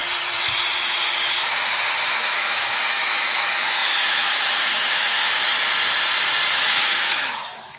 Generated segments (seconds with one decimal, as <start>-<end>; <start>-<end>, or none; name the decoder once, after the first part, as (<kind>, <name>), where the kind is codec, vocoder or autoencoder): 2.1-5.5 (autoencoder, DAC-VAE); 6.5-7.8